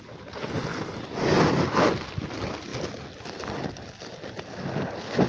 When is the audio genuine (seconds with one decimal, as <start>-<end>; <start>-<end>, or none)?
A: 0.0-5.3